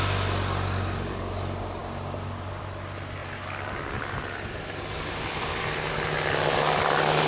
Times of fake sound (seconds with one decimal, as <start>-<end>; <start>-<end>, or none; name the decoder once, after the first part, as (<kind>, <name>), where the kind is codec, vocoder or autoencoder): none